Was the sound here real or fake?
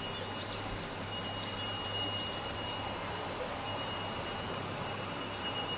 real